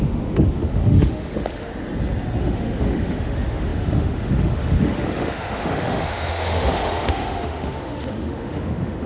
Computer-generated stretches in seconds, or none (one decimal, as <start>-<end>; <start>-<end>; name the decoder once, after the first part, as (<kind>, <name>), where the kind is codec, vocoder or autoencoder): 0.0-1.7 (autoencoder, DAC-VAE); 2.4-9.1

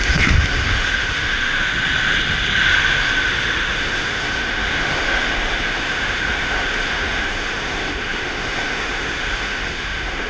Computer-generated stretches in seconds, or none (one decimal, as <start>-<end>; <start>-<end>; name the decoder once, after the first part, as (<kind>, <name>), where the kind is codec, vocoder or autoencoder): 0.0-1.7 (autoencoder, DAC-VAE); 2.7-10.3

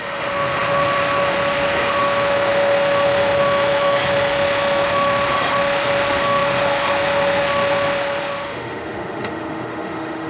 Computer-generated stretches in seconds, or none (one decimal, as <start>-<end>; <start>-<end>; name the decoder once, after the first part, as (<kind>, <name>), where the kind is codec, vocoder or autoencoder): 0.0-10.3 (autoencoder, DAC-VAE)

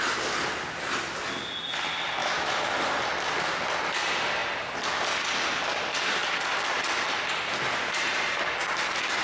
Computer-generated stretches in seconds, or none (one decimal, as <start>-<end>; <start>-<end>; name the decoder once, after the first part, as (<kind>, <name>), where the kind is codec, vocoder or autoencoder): 2.2-2.7 (autoencoder, DAC-VAE)

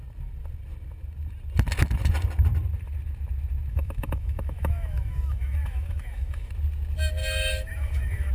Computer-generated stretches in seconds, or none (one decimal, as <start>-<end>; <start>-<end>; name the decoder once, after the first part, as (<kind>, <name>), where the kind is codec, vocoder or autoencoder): 3.7-6.5 (autoencoder, DAC-VAE); 7.2-8.3

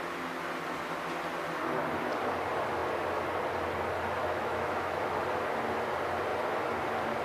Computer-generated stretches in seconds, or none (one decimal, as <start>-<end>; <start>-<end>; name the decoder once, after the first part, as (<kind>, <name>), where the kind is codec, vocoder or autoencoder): 4.2-5.2 (autoencoder, DAC-VAE)